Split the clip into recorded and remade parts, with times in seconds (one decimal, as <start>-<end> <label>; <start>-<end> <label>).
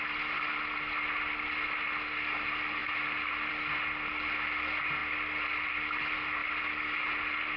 0.0-7.6 recorded